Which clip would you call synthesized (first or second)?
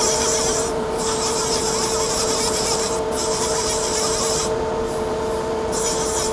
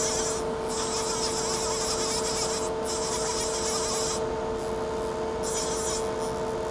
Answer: first